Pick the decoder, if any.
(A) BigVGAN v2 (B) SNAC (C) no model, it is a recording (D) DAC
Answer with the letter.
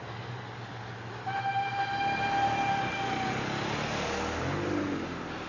C